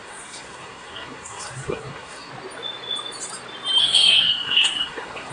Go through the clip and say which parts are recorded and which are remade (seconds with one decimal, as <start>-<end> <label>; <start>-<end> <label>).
0.0-2.3 remade; 2.3-3.8 recorded; 3.8-5.3 remade